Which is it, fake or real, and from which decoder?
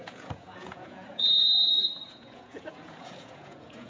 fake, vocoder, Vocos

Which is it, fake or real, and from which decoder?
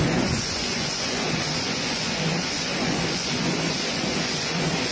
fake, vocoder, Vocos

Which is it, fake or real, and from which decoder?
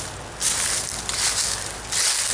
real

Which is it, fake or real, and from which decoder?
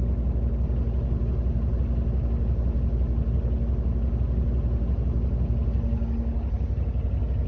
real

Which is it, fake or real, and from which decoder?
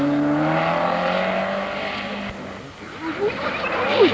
real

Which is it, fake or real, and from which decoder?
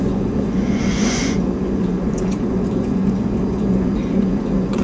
fake, vocoder, Vocos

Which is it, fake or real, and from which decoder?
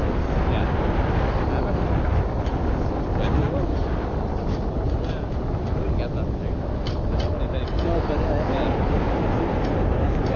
real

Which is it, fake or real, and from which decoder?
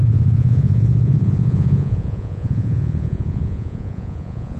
fake, vocoder, Vocos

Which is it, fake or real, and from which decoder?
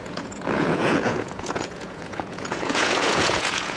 fake, vocoder, Vocos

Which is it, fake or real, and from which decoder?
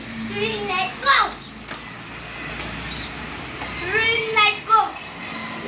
real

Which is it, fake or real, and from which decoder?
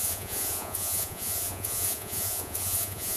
fake, vocoder, Vocos